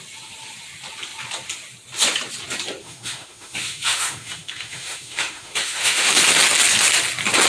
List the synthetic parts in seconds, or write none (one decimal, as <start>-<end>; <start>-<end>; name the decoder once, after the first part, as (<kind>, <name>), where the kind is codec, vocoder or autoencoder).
2.8-6.1 (autoencoder, DAC-VAE)